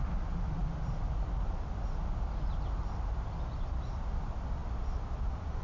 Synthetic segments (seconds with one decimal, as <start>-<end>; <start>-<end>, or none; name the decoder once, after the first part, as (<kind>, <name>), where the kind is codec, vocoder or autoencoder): none

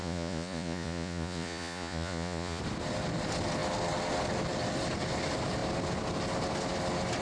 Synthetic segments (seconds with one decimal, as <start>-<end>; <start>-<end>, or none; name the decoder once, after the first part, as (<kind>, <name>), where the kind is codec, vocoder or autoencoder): 0.0-2.6 (vocoder, Vocos)

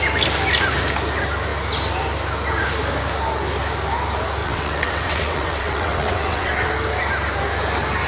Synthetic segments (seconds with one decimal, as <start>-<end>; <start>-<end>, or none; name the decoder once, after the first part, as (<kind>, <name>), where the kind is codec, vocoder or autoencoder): 4.4-6.7 (vocoder, WaveNeXt)

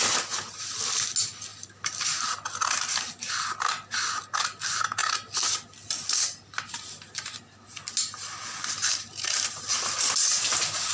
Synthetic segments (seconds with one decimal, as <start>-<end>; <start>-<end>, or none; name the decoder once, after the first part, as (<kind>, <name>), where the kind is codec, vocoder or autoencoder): 1.5-3.3 (vocoder, BigVGAN v2); 5.0-6.7; 8.9-10.3